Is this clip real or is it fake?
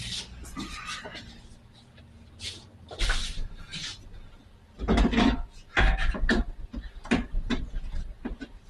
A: real